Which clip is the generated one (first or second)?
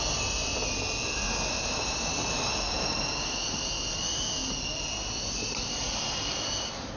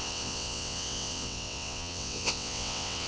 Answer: second